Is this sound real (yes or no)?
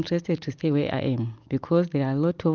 yes